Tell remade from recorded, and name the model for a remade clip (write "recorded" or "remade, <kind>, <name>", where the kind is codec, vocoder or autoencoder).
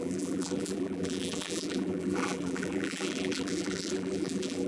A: remade, vocoder, BigVGAN v2